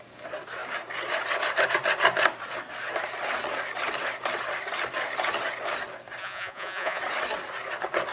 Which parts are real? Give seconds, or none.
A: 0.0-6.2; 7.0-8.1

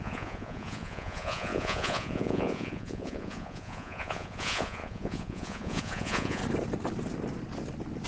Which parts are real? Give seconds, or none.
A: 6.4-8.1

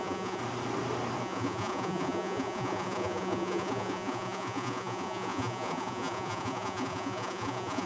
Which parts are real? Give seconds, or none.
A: 0.4-1.2